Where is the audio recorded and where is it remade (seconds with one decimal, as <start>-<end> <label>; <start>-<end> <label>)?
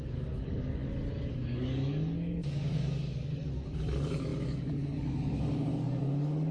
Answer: 0.0-0.8 remade; 0.8-1.3 recorded; 1.3-6.5 remade